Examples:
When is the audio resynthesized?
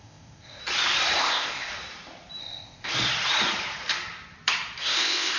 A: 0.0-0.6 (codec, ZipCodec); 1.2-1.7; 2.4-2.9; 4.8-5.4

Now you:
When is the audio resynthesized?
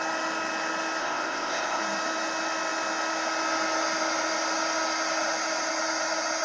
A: 1.0-1.8 (codec, ZipCodec)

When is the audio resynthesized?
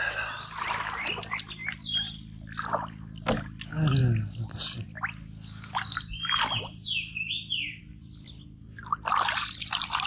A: none